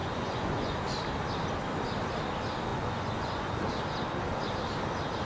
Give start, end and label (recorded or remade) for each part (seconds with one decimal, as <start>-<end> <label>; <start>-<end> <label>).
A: 0.0-0.8 remade; 0.8-2.7 recorded; 2.7-3.7 remade; 3.7-5.2 recorded